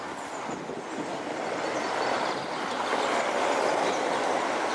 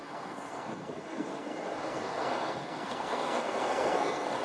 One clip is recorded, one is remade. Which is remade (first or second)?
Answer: second